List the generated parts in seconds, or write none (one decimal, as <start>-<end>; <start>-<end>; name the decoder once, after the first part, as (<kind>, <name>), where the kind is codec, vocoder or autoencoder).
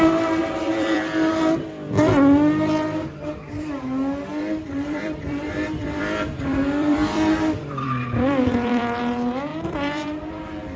0.4-1.4 (vocoder, BigVGAN v2); 4.3-9.0; 9.5-10.3